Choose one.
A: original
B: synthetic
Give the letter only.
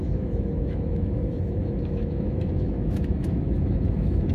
B